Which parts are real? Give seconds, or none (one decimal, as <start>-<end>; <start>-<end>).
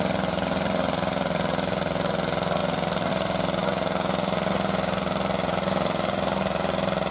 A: 0.0-2.6; 3.1-7.1